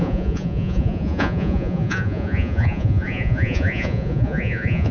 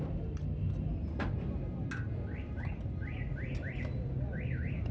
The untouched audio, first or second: second